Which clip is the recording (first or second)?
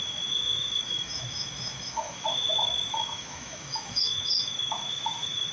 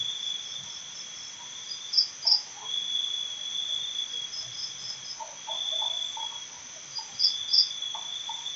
second